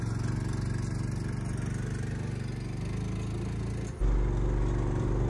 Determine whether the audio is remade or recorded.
recorded